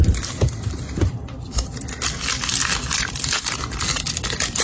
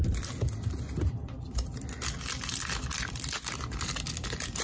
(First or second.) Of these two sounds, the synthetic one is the first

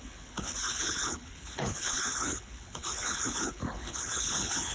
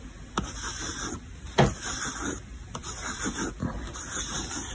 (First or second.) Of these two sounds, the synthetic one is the first